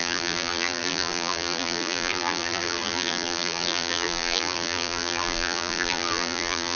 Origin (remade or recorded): remade